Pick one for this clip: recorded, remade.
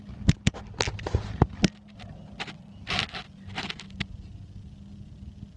recorded